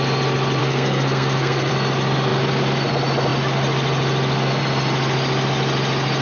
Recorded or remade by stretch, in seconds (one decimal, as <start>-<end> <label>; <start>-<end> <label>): 0.0-0.6 recorded; 0.6-1.7 remade; 1.7-6.2 recorded